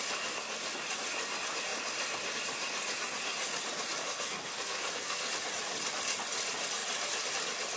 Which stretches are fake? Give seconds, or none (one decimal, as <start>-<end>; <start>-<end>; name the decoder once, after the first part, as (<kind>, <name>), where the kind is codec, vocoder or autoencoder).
4.0-5.3 (codec, SNAC)